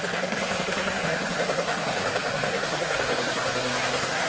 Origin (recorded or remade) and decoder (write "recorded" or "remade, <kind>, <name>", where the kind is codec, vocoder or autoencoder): remade, codec, SNAC